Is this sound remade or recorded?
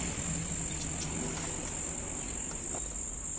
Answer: recorded